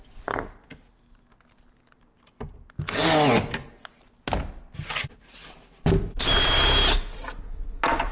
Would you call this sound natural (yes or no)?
yes